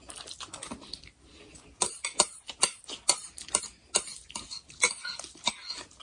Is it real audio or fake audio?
real